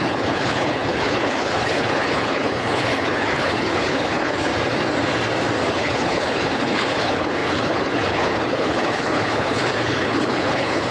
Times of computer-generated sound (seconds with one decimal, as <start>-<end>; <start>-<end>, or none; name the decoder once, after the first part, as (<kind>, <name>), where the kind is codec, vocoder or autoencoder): 0.0-4.5 (codec, HILCodec); 5.7-10.9